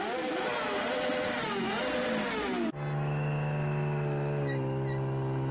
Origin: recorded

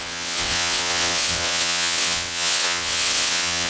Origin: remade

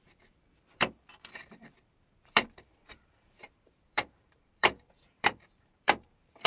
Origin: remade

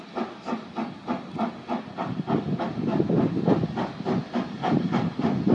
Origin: recorded